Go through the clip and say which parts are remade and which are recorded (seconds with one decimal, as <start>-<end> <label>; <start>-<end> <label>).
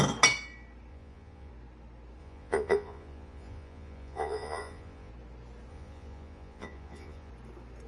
0.0-0.9 recorded; 0.9-1.5 remade; 1.5-2.2 recorded; 2.2-5.1 remade; 5.1-5.7 recorded; 5.7-7.3 remade; 7.3-7.9 recorded